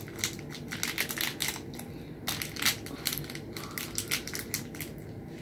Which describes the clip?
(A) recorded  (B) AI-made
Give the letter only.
A